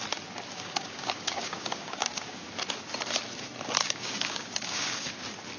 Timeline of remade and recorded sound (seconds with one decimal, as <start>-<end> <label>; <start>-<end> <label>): 0.0-0.5 recorded; 0.5-2.5 remade; 2.5-3.8 recorded; 3.8-5.1 remade; 5.1-5.6 recorded